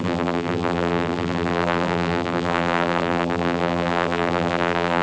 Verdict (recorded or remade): remade